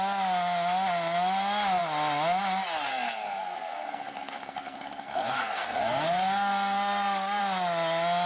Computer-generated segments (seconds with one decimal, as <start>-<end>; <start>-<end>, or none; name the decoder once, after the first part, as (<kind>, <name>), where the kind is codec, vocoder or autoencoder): 2.9-7.4 (codec, SNAC)